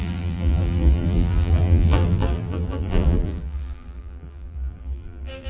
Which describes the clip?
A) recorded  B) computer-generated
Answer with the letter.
B